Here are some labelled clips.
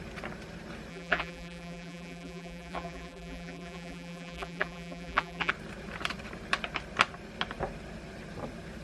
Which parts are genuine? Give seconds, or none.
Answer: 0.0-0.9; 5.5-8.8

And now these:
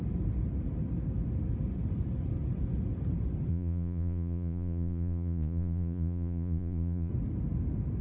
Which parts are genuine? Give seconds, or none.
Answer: 0.0-3.5; 7.1-8.0

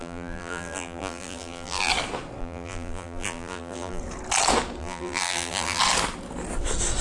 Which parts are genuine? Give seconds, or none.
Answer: 1.9-2.4; 4.0-4.8; 5.8-7.0

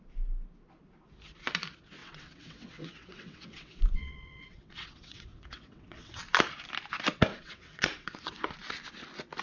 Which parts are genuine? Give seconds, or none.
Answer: 0.0-2.0; 6.2-7.3; 8.5-9.4

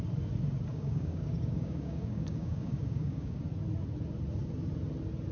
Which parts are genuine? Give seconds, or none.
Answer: 0.0-0.7; 3.4-5.3

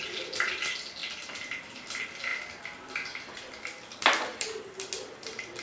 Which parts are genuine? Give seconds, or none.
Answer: 0.0-5.6

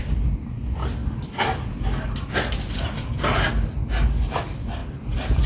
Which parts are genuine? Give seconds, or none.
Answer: 0.0-5.5

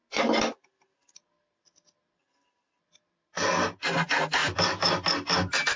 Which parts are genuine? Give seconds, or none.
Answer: 0.0-5.8